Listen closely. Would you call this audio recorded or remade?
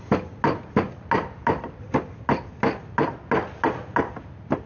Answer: recorded